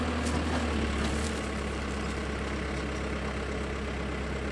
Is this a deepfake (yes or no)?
no